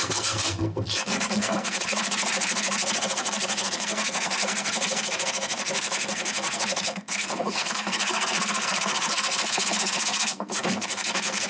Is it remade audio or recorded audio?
remade